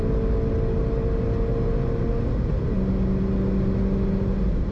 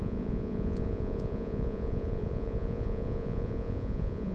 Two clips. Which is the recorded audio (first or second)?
first